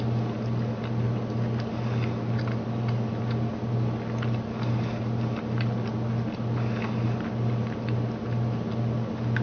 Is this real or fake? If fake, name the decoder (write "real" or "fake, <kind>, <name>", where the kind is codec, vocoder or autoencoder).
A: real